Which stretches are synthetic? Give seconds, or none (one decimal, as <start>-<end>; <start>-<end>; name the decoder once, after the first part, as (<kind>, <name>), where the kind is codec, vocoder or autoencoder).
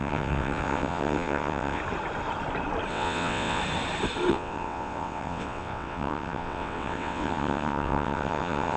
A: 0.0-1.8 (vocoder, WaveNeXt); 2.9-3.6; 4.3-8.8